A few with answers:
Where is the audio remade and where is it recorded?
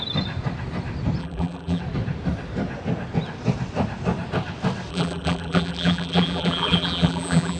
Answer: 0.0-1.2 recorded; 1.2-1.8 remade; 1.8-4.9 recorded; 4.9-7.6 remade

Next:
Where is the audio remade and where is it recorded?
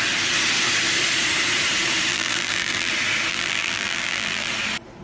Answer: 0.0-2.1 recorded; 2.1-2.9 remade; 2.9-3.3 recorded; 3.3-4.5 remade; 4.5-5.0 recorded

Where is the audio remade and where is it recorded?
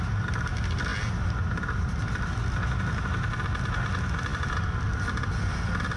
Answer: 0.0-6.0 recorded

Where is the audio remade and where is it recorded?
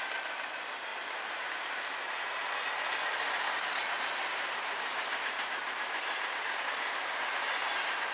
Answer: 0.0-0.9 recorded; 0.9-1.7 remade; 1.7-4.3 recorded; 4.3-7.1 remade; 7.1-8.1 recorded